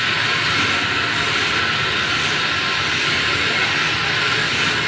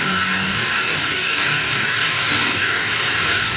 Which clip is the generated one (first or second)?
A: second